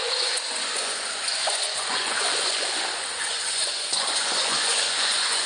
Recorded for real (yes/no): no